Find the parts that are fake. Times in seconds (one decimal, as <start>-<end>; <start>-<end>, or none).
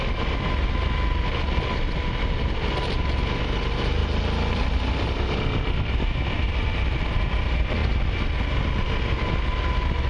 none